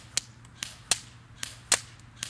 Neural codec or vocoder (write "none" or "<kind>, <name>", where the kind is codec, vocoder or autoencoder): none